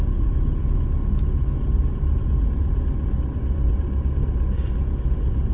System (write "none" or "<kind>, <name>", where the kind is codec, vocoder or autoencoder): none